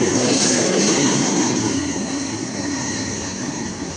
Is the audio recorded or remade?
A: remade